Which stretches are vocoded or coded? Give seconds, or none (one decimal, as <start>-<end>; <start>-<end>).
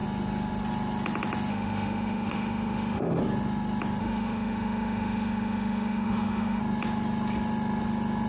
1.5-3.2; 4.0-6.6